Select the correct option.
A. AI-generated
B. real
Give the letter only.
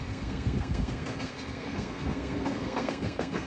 A